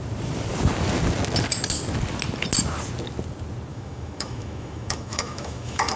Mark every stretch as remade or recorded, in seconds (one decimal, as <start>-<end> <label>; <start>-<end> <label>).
0.0-3.7 recorded; 3.7-6.0 remade